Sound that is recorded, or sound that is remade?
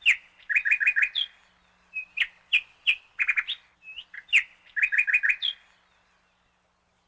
recorded